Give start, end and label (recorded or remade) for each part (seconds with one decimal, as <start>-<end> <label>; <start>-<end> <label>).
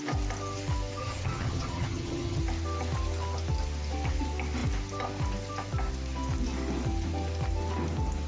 0.0-1.0 recorded; 1.0-2.4 remade; 2.4-8.3 recorded